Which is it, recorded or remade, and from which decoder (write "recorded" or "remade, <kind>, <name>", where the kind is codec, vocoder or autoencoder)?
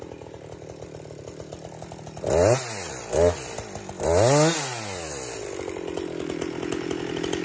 recorded